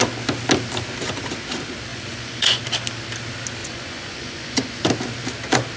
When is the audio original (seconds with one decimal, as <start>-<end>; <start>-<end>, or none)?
0.0-1.9; 2.6-3.6; 4.8-5.8